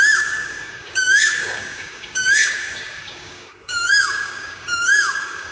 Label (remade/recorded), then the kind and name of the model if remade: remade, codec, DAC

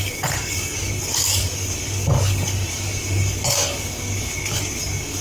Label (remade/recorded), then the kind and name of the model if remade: remade, codec, DAC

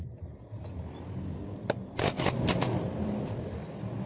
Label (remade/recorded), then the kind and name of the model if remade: recorded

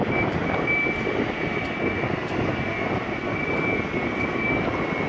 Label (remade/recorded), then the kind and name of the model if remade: recorded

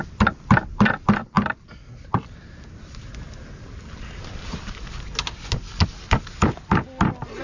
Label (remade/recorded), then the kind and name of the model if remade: recorded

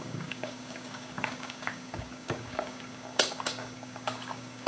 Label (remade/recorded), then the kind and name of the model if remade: remade, codec, DAC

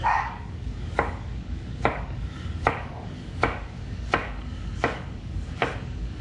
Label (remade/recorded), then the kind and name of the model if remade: remade, codec, DAC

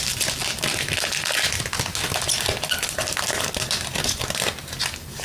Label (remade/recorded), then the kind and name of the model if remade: recorded